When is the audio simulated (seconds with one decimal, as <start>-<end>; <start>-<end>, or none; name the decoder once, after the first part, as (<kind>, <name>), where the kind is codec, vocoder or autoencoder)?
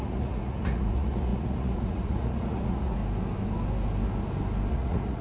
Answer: 0.0-3.0 (vocoder, Vocos); 4.7-5.2